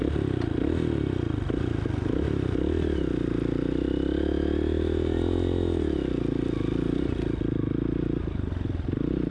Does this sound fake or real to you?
real